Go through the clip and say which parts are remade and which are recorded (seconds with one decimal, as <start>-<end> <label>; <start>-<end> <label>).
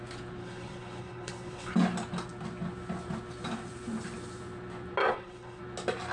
0.0-0.4 recorded; 0.4-1.7 remade; 1.7-5.1 recorded; 5.1-5.6 remade; 5.6-6.1 recorded